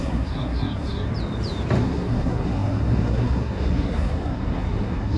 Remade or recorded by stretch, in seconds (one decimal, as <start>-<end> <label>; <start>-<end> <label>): 0.0-1.1 remade; 1.1-1.8 recorded; 1.8-5.2 remade